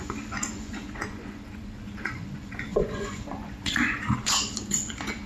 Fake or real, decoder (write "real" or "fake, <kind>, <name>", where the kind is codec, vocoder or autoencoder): fake, vocoder, Vocos